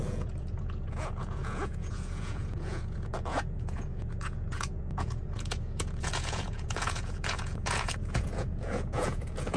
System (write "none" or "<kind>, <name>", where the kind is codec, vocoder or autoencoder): vocoder, Vocos